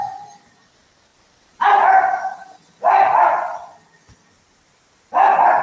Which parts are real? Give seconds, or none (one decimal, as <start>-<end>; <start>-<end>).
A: 0.0-1.1; 1.9-5.6